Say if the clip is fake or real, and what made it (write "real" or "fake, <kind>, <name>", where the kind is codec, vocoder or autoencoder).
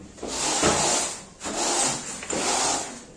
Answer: real